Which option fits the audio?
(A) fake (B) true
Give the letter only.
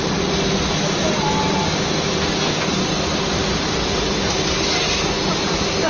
B